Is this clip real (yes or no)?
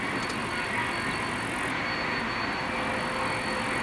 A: yes